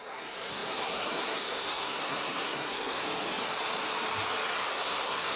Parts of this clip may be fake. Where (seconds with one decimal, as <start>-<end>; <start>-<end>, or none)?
0.0-3.0; 4.7-5.4